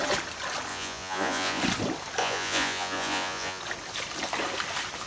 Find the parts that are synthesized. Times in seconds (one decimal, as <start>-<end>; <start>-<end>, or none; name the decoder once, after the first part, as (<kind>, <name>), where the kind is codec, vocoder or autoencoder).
0.7-1.6 (vocoder, Vocos); 2.2-3.6